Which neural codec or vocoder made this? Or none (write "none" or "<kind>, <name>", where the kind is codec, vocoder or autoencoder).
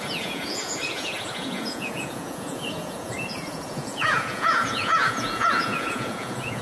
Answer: vocoder, Vocos